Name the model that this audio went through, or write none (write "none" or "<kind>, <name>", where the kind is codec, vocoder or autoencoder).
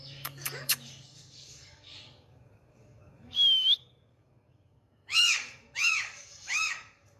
codec, DAC